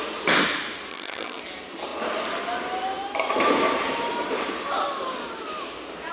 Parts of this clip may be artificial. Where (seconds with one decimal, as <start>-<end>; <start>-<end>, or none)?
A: 0.9-1.4